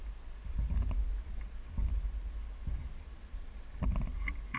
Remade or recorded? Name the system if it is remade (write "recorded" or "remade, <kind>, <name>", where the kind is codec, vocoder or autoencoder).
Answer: recorded